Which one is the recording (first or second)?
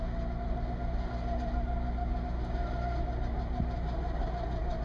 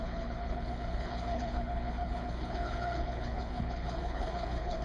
first